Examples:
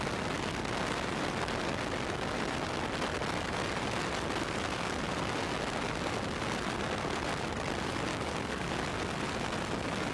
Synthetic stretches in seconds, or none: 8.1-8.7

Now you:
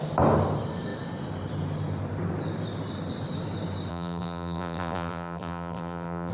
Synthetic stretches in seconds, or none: 3.9-6.3